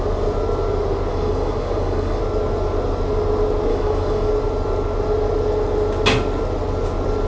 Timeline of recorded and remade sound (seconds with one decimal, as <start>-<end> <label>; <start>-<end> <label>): 0.0-1.1 recorded; 1.1-2.2 remade; 2.2-3.7 recorded; 3.7-4.3 remade; 4.3-7.3 recorded